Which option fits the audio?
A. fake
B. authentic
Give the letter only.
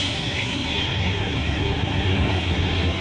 A